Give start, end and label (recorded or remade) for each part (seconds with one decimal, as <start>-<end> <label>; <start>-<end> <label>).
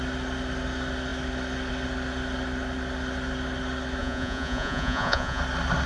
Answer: 0.0-4.0 recorded; 4.0-5.4 remade; 5.4-5.9 recorded